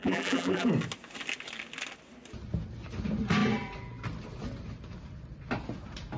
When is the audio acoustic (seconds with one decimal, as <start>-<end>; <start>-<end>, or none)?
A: 0.7-6.2